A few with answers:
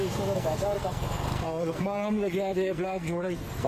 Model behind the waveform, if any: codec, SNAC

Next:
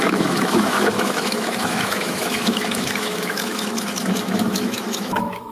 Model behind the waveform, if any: autoencoder, DAC-VAE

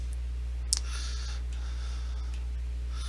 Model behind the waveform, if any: none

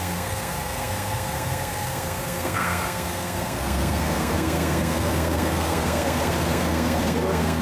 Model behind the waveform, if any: codec, SNAC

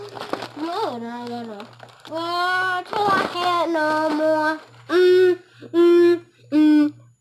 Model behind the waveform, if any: none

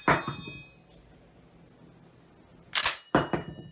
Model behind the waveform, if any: none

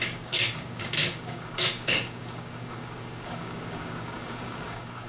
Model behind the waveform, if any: codec, DAC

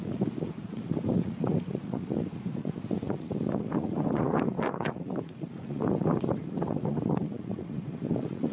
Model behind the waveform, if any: vocoder, Vocos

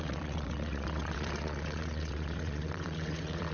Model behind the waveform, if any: vocoder, WaveNeXt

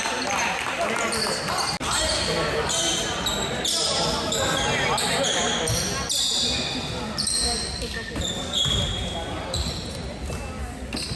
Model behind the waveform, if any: none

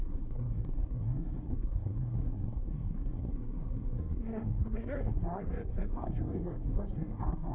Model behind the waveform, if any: codec, SNAC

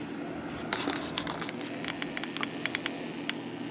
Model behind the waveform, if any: none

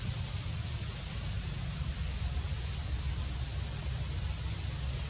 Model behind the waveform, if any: none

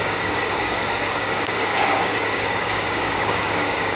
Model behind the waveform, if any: codec, DAC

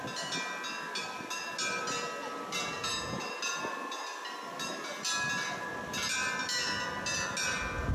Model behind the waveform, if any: none